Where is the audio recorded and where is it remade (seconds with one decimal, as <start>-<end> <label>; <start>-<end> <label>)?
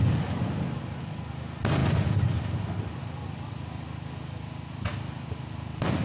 0.0-6.0 recorded